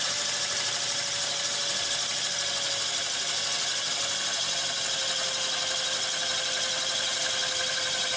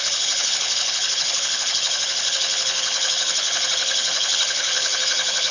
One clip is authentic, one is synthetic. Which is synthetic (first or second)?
second